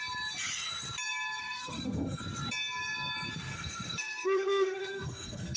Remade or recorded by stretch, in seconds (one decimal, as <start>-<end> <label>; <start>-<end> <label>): 0.0-1.4 recorded; 1.4-2.2 remade; 2.2-3.5 recorded; 3.5-5.6 remade